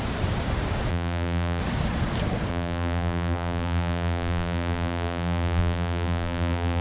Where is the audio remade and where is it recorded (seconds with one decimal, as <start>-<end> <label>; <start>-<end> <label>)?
0.0-0.9 recorded; 0.9-1.6 remade; 1.6-2.5 recorded; 2.5-6.8 remade